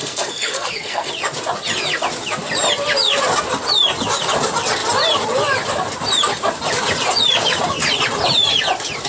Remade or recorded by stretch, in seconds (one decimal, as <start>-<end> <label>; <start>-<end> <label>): 0.0-1.1 remade; 1.1-9.1 recorded